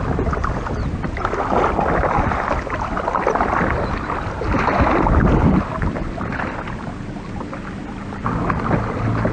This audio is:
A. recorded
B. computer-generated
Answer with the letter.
A